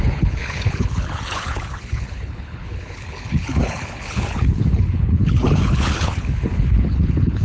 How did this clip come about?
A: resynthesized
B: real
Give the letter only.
A